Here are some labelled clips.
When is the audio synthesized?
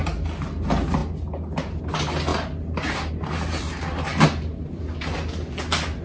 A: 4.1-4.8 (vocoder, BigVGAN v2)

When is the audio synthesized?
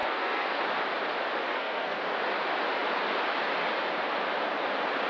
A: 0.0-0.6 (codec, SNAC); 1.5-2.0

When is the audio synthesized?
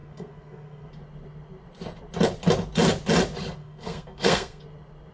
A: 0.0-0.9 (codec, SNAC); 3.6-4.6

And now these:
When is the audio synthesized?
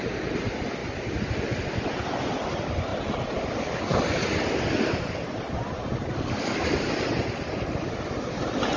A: none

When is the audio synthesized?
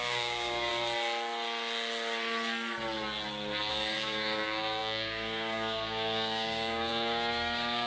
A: 0.0-0.7 (codec, DAC); 3.7-7.9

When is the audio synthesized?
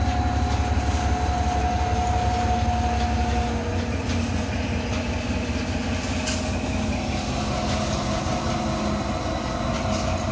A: none